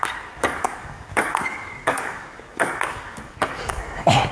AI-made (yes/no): yes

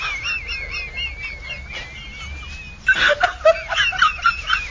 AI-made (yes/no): no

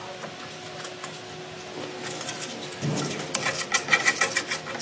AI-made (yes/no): no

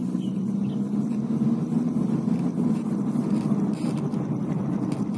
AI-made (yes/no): no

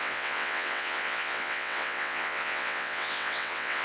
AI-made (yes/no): yes